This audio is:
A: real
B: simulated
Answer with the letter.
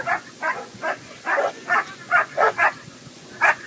B